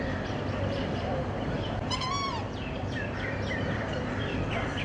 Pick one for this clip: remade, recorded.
remade